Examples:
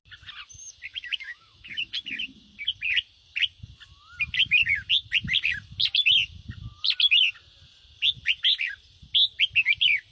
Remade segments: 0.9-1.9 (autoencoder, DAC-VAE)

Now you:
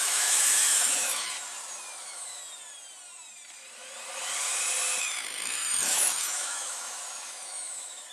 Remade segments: 0.0-1.3 (autoencoder, DAC-VAE); 2.0-2.4; 5.0-8.1

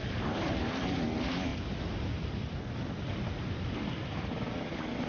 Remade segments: none

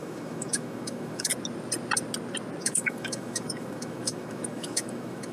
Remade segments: 0.0-1.3 (autoencoder, DAC-VAE); 2.6-5.3

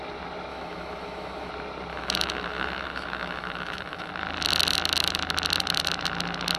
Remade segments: 0.5-1.5 (autoencoder, DAC-VAE); 1.9-4.1

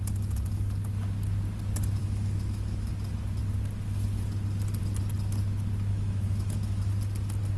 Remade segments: 2.0-2.9 (autoencoder, DAC-VAE); 5.9-6.9

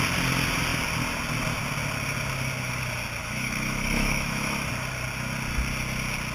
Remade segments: 3.2-4.7 (autoencoder, DAC-VAE)

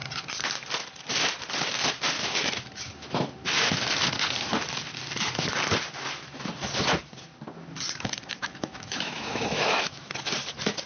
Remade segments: 8.4-10.1 (autoencoder, DAC-VAE)